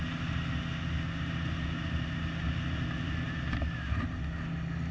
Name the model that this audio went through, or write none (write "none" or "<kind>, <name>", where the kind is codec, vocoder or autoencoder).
none